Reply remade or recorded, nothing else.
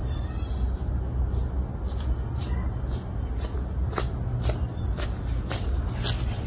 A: recorded